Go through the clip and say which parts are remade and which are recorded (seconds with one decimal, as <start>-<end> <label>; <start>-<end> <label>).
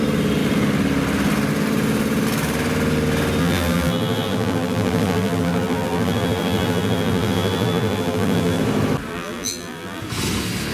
0.0-3.4 recorded; 3.4-8.6 remade; 8.6-9.1 recorded; 9.1-10.0 remade; 10.0-10.7 recorded